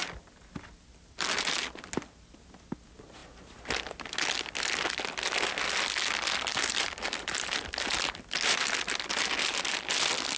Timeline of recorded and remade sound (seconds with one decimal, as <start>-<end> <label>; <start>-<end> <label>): 0.0-10.4 recorded